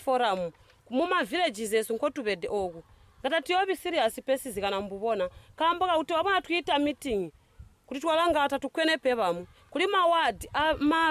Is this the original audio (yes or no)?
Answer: yes